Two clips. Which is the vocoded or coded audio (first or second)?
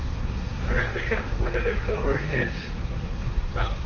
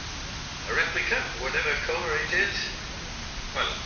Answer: first